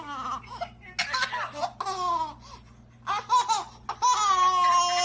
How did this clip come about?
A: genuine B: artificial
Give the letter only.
A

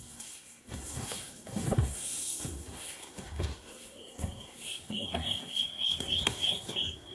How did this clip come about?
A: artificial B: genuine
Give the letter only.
A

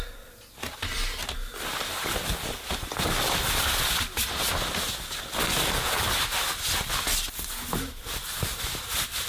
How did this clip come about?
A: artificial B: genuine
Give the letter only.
B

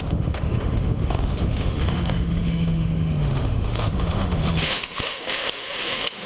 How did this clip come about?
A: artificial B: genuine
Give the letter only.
A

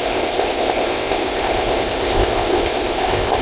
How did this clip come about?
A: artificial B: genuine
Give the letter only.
A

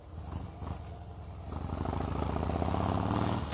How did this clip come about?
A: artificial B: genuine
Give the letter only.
B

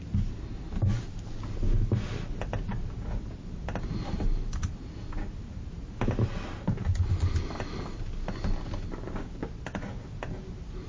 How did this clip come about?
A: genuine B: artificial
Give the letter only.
A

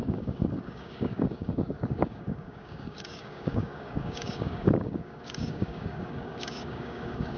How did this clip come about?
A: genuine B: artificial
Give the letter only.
B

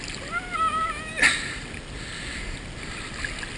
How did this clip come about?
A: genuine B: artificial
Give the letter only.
A